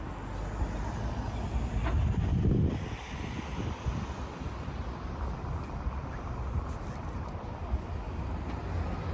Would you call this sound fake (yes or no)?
no